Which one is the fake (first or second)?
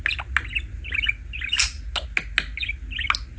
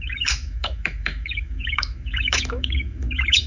second